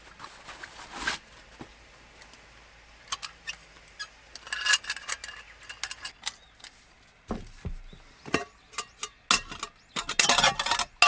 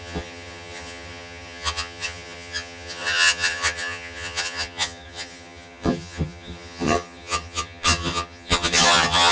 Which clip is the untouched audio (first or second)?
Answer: first